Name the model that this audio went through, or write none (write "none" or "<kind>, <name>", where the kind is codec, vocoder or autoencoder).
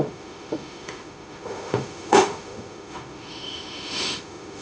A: autoencoder, DAC-VAE